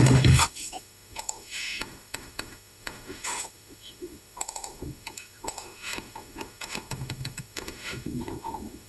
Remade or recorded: remade